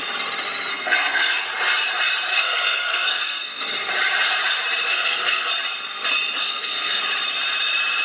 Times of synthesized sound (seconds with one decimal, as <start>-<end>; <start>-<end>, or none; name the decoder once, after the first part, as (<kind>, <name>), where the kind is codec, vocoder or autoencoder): 0.7-1.3 (codec, SNAC); 2.3-3.6; 4.9-5.5; 6.4-7.0